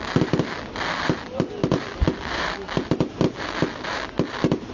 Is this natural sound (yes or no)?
yes